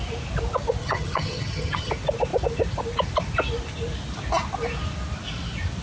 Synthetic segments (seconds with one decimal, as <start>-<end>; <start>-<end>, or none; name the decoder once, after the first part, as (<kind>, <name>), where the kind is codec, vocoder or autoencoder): 0.8-1.9 (vocoder, HiFi-GAN)